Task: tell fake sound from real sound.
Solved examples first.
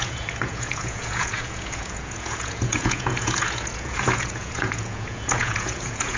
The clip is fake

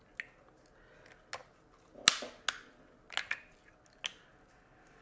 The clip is real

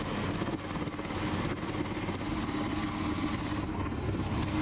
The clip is real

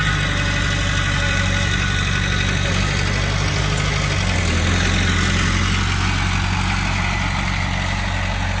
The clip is real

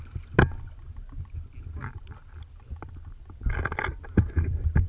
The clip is real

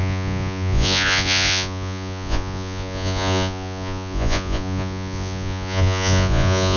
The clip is fake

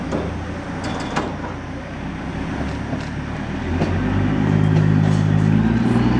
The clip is real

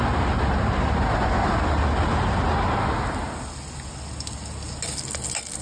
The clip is real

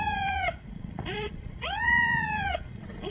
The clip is fake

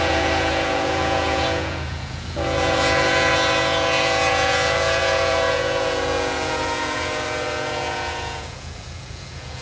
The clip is fake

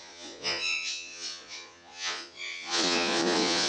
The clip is fake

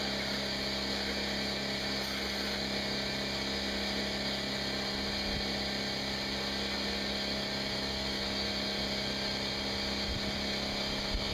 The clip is real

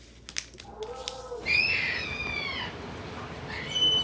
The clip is real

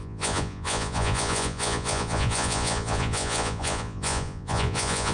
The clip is fake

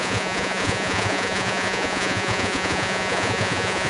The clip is fake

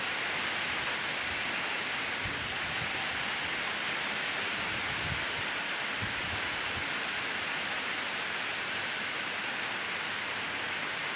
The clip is real